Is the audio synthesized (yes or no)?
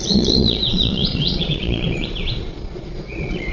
yes